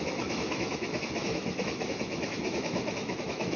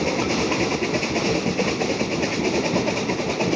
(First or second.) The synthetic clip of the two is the first